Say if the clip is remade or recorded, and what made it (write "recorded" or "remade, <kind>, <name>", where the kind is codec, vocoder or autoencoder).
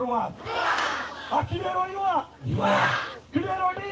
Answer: remade, codec, DAC